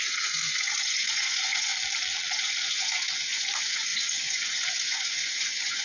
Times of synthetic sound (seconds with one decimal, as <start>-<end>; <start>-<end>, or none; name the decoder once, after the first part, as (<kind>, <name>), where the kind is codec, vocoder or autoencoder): 0.0-1.7 (vocoder, Vocos); 2.3-5.8